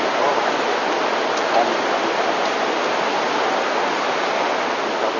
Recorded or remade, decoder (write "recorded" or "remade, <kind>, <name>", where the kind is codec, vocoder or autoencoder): recorded